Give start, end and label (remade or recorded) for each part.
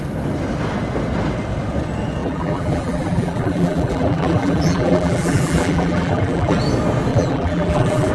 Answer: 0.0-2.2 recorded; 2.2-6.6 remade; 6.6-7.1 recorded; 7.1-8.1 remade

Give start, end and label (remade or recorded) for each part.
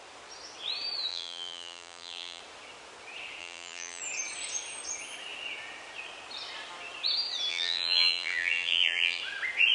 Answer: 0.0-1.1 recorded; 1.1-2.4 remade; 2.4-3.4 recorded; 3.4-4.0 remade; 4.0-7.5 recorded; 7.5-9.2 remade; 9.2-9.7 recorded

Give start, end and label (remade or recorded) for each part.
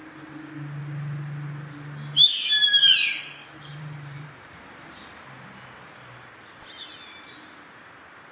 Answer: 0.0-3.7 recorded; 3.7-5.2 remade; 5.2-8.3 recorded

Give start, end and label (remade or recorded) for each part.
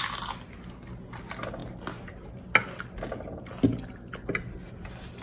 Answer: 0.0-5.2 recorded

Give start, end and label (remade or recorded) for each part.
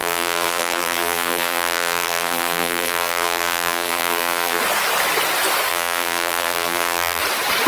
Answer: 0.0-4.6 remade; 4.6-5.7 recorded; 5.7-7.2 remade; 7.2-7.7 recorded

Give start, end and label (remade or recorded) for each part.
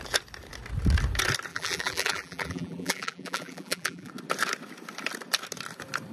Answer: 0.0-1.5 recorded; 1.5-4.1 remade; 4.1-6.1 recorded